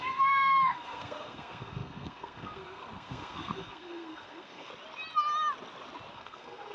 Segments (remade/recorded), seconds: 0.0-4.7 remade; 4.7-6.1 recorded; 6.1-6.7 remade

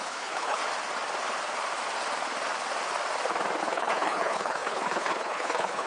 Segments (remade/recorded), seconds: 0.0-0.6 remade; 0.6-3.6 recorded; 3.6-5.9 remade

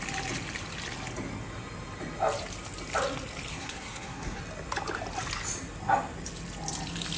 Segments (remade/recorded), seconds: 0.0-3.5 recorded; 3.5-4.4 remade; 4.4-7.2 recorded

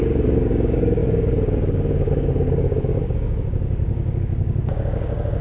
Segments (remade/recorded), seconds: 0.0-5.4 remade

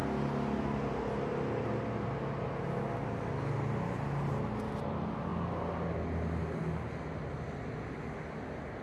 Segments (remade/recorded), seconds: 0.0-8.8 recorded